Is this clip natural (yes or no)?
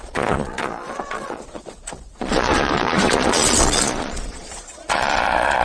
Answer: no